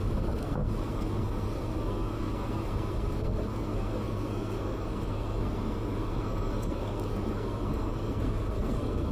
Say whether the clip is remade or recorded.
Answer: remade